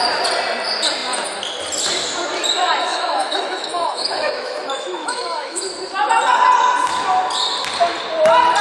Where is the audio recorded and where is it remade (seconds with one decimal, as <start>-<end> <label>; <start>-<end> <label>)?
0.0-2.9 recorded; 2.9-5.6 remade; 5.6-8.6 recorded